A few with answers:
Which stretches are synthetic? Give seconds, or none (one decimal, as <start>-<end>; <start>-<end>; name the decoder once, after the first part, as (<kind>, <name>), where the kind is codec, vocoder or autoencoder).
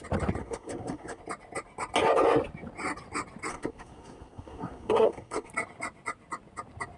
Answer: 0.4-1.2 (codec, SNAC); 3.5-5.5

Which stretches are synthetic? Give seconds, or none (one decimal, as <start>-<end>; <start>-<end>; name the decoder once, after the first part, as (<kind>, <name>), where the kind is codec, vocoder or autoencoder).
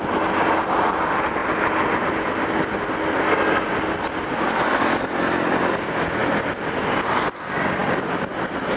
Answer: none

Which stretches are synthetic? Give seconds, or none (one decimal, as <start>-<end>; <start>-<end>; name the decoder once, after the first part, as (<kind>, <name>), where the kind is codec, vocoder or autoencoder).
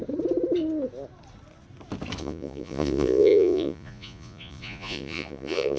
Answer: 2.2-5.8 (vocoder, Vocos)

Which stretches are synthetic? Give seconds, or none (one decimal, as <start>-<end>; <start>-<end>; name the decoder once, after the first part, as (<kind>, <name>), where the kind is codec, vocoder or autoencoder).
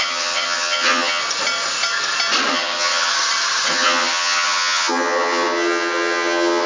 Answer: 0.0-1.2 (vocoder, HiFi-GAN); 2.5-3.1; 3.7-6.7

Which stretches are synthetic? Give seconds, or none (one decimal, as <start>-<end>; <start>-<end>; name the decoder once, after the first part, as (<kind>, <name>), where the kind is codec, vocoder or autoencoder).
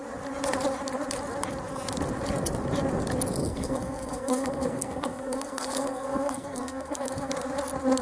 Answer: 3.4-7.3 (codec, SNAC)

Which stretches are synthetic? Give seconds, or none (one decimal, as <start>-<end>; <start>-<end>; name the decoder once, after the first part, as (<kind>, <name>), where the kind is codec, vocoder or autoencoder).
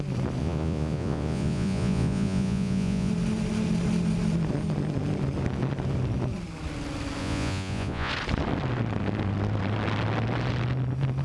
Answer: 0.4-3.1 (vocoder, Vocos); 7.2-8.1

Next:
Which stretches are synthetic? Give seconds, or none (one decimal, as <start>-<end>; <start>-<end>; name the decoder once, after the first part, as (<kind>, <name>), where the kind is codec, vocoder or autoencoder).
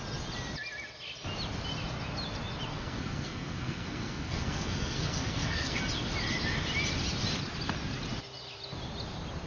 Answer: 2.7-5.8 (codec, SNAC)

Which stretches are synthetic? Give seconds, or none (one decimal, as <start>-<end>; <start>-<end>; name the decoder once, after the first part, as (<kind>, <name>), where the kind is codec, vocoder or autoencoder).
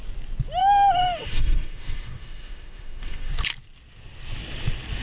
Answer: 0.6-3.3 (autoencoder, DAC-VAE)